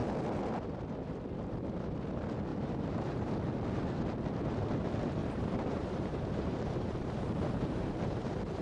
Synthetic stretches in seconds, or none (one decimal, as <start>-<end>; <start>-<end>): 2.5-3.3; 5.2-8.6